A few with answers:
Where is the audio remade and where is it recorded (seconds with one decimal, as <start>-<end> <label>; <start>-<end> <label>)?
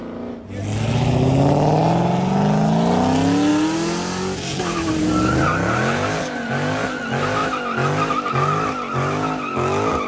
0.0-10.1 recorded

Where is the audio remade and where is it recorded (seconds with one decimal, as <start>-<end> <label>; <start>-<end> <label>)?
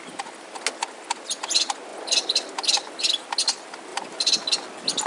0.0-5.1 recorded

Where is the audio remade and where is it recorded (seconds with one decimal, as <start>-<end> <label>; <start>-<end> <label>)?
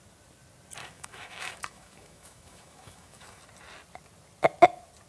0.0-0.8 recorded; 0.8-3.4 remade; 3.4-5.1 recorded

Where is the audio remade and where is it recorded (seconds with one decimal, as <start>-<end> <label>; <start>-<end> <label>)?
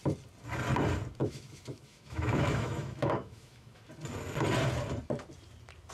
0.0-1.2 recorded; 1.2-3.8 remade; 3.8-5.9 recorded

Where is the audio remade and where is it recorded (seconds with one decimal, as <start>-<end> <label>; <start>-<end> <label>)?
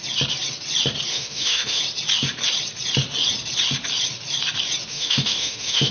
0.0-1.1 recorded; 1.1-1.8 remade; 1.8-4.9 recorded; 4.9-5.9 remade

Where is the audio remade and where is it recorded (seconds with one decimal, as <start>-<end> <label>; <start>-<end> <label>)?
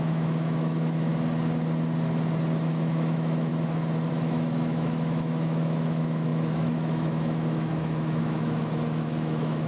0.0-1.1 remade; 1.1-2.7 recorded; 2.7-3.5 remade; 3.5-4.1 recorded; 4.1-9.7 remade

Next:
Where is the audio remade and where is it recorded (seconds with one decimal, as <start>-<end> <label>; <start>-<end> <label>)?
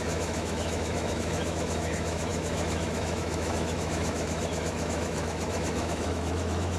0.0-6.8 remade